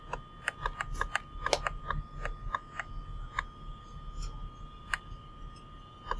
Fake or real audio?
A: real